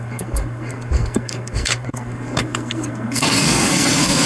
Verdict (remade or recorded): remade